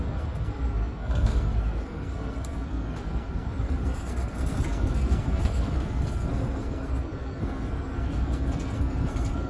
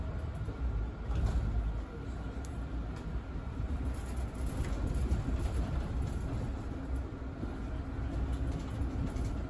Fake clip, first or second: first